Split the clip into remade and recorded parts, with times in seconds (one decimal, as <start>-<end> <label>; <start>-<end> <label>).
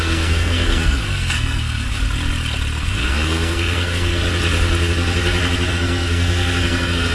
0.0-2.0 remade; 2.0-2.8 recorded; 2.8-4.2 remade; 4.2-5.7 recorded; 5.7-7.1 remade